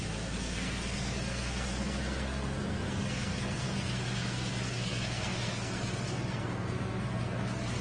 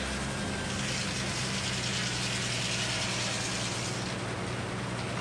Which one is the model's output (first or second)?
first